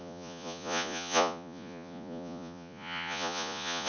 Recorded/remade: remade